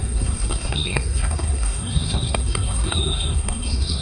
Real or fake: fake